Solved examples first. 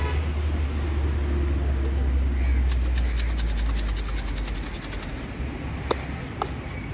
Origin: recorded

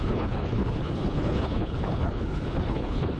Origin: remade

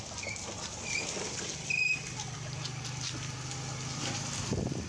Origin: recorded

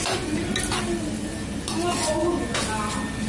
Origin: recorded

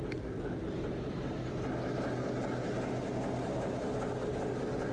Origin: recorded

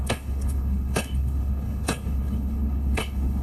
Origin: remade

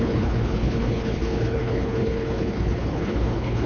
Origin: remade